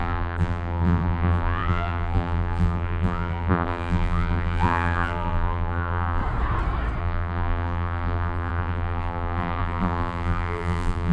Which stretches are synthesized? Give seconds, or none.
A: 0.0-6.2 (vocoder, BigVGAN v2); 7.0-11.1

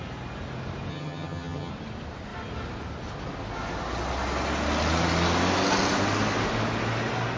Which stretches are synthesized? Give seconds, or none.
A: 0.9-1.7 (vocoder, HiFi-GAN)

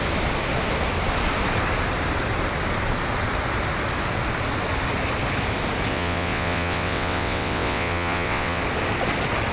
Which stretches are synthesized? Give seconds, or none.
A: 5.9-8.6 (vocoder, WaveNeXt)

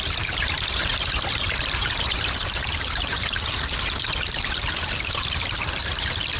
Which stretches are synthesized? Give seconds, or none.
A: 0.0-6.4 (vocoder, BigVGAN v2)